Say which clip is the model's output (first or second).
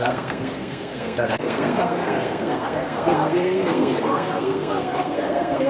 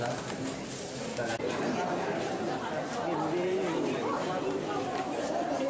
first